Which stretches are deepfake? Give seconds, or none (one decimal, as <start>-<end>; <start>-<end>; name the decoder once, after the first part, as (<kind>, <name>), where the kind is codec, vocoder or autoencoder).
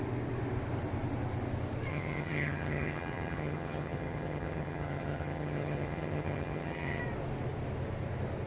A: 1.9-7.0 (vocoder, HiFi-GAN)